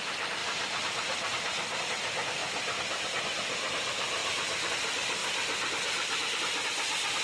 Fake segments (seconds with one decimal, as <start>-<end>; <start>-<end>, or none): 0.4-1.8; 2.4-3.1; 4.2-4.7; 5.2-6.4